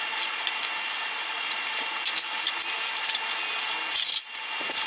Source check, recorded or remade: recorded